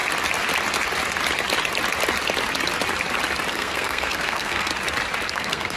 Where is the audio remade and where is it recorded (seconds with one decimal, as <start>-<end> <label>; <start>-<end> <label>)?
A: 0.0-3.5 recorded; 3.5-4.7 remade; 4.7-5.3 recorded; 5.3-5.8 remade